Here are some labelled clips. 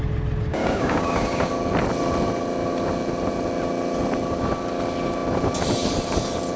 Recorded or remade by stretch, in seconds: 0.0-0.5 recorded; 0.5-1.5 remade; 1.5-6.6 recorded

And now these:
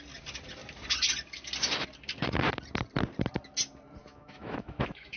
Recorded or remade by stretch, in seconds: 0.0-4.0 recorded; 4.0-5.2 remade

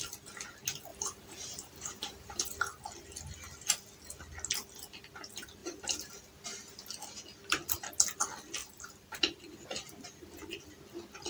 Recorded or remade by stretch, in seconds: 0.0-0.9 recorded; 0.9-2.4 remade; 2.4-5.6 recorded; 5.6-6.2 remade; 6.2-8.6 recorded; 8.6-9.2 remade; 9.2-11.3 recorded

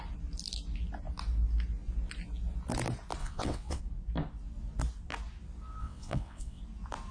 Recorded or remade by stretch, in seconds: 0.0-3.2 recorded; 3.2-3.8 remade; 3.8-5.8 recorded; 5.8-6.6 remade; 6.6-7.1 recorded

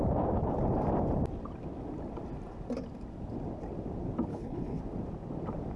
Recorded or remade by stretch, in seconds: 0.0-4.3 recorded; 4.3-4.8 remade; 4.8-5.8 recorded

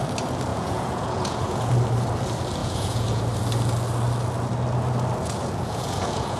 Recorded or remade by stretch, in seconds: 0.0-0.5 recorded; 0.5-1.7 remade; 1.7-2.6 recorded; 2.6-3.2 remade; 3.2-5.2 recorded; 5.2-6.4 remade